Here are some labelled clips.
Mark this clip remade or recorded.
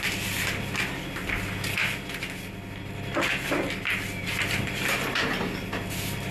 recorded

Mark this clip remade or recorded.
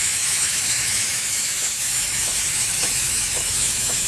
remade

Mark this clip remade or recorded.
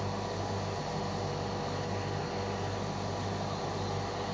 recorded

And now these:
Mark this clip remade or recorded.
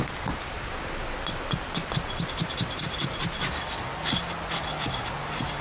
recorded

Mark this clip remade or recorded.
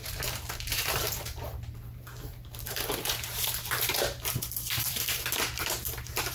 remade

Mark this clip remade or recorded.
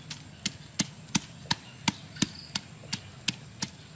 recorded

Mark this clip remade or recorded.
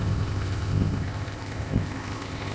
remade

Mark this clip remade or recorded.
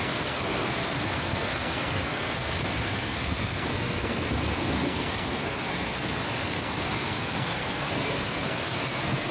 remade